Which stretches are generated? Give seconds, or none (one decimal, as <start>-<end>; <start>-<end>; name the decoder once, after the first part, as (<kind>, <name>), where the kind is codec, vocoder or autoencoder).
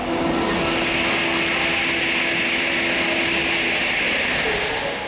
none